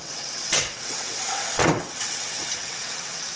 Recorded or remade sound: remade